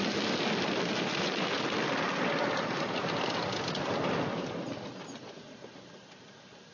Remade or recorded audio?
recorded